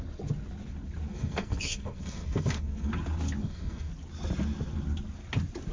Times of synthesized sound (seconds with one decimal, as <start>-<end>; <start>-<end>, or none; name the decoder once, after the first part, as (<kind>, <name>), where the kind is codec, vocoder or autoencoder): 1.1-2.9 (codec, SNAC); 3.4-3.9